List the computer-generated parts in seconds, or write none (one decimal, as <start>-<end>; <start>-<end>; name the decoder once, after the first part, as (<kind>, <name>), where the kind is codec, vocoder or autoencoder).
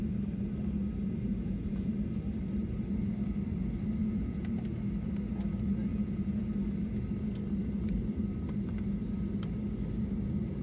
1.3-1.9 (vocoder, Vocos); 4.0-4.5; 5.9-6.4